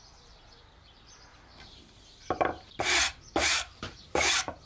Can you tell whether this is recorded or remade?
remade